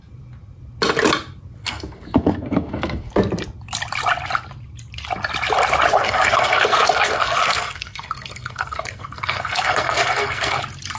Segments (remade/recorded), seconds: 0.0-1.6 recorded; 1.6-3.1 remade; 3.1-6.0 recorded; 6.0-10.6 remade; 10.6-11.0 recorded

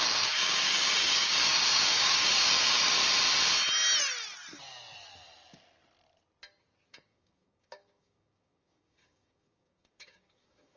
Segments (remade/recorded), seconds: 0.0-3.0 remade; 3.0-6.9 recorded; 6.9-10.8 remade

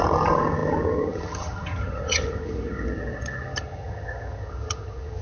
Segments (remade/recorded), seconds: 0.0-5.2 remade